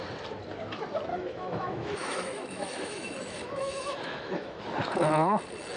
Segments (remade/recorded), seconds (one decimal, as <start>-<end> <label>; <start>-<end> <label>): 0.0-1.1 recorded; 1.1-4.6 remade; 4.6-5.8 recorded